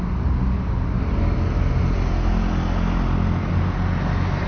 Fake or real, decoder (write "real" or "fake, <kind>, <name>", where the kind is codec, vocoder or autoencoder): real